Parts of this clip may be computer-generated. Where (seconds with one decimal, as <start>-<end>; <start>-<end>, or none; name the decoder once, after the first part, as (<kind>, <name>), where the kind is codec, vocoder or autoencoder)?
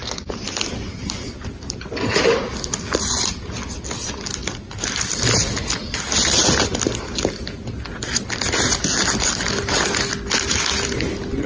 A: none